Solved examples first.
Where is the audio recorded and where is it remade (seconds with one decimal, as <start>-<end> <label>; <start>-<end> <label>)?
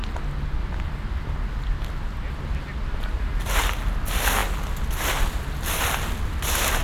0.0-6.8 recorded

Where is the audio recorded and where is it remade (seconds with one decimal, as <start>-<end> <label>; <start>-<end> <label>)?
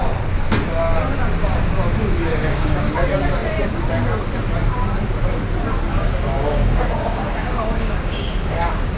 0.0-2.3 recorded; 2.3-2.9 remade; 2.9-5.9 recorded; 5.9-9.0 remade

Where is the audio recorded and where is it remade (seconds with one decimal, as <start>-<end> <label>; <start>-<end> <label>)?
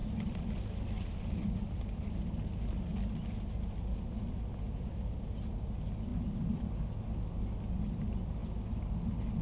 0.0-9.4 recorded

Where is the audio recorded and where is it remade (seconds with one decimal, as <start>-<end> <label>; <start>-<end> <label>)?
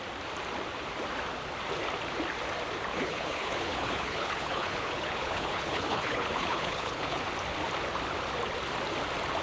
0.0-2.9 recorded; 2.9-7.2 remade; 7.2-9.4 recorded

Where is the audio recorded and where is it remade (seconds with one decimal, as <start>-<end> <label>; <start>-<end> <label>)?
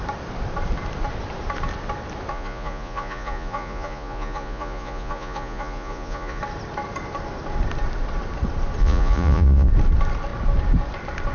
0.0-2.3 recorded; 2.3-6.4 remade; 6.4-8.8 recorded; 8.8-9.7 remade; 9.7-11.3 recorded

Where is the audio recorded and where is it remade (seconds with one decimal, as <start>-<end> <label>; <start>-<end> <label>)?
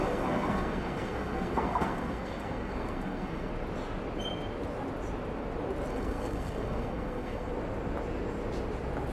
0.0-3.5 remade; 3.5-5.9 recorded; 5.9-7.5 remade; 7.5-9.1 recorded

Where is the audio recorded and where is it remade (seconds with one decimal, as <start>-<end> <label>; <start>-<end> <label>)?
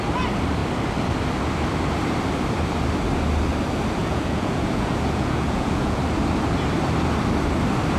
0.0-4.0 recorded; 4.0-6.0 remade; 6.0-8.0 recorded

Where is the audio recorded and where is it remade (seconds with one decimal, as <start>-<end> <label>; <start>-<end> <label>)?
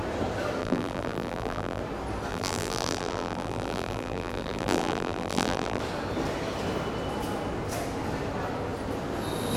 0.0-0.6 recorded; 0.6-1.8 remade; 1.8-2.3 recorded; 2.3-5.8 remade; 5.8-9.6 recorded